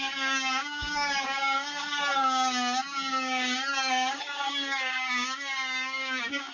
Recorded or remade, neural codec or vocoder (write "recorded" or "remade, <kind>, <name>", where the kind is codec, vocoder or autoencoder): remade, codec, DAC